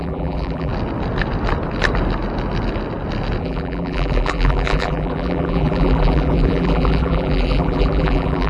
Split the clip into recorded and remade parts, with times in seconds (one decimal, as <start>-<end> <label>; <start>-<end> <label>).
0.0-0.7 remade; 0.7-3.4 recorded; 3.4-8.5 remade